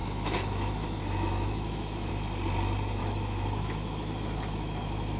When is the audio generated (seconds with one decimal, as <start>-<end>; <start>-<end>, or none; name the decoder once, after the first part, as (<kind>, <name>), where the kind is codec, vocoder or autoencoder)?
0.0-2.1 (autoencoder, DAC-VAE); 3.0-5.2